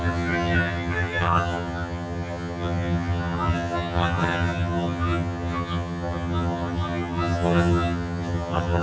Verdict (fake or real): fake